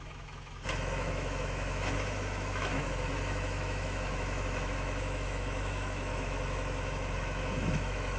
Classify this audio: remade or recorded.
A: remade